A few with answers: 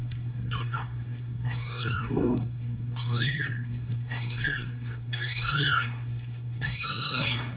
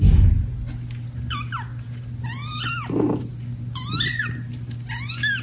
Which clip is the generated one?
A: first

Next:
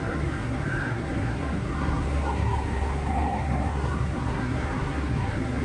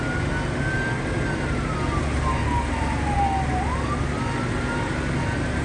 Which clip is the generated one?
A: first